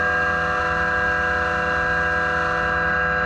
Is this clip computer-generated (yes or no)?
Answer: no